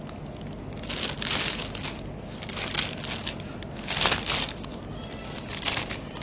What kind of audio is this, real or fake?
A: real